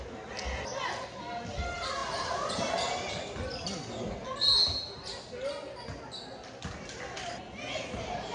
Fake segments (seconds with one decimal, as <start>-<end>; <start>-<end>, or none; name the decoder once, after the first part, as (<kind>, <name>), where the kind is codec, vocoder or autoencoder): none